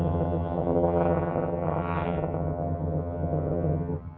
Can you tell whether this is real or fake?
fake